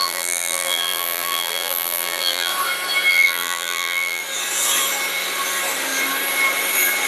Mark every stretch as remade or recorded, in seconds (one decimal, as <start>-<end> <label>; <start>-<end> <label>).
0.0-2.5 remade; 2.5-3.1 recorded; 3.1-4.2 remade; 4.2-7.1 recorded